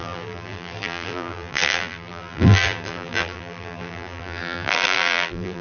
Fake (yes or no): yes